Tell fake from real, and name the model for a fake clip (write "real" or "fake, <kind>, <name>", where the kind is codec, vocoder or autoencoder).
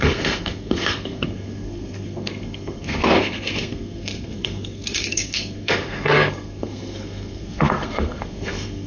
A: fake, codec, SNAC